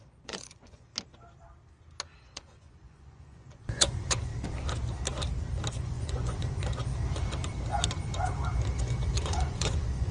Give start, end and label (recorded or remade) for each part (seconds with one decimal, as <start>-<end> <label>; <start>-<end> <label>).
0.0-0.9 remade; 0.9-2.2 recorded; 2.2-4.3 remade; 4.3-5.7 recorded; 5.7-6.9 remade; 6.9-8.8 recorded; 8.8-10.1 remade